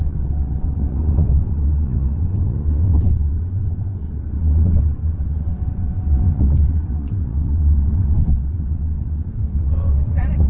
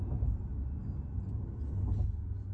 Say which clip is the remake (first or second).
first